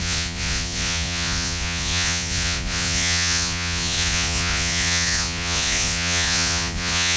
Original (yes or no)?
no